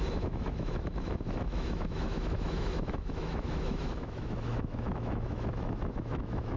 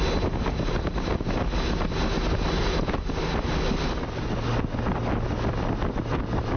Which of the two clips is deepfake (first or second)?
first